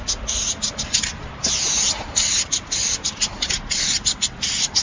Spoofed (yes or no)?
no